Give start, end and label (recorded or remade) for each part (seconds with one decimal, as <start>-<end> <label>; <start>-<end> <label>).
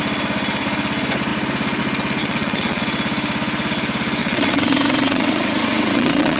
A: 0.0-2.2 recorded; 2.2-2.8 remade; 2.8-4.2 recorded; 4.2-6.4 remade